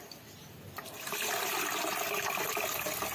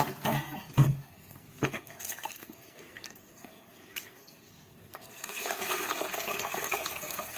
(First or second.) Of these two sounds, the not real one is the second